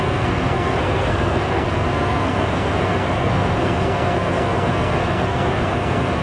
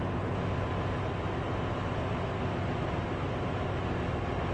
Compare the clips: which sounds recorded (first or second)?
second